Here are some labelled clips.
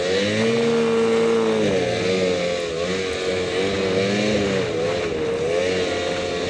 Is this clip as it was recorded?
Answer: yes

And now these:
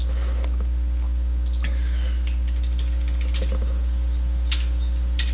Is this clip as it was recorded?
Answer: yes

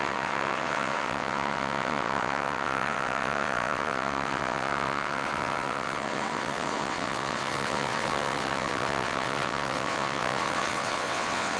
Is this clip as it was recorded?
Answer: no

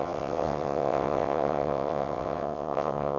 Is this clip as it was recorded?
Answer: no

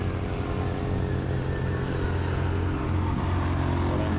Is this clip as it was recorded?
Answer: yes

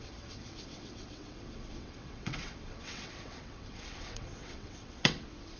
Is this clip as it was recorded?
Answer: no